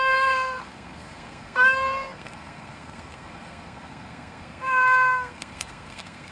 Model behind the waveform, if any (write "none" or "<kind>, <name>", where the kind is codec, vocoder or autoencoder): codec, SNAC